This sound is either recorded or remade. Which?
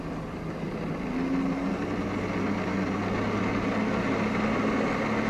recorded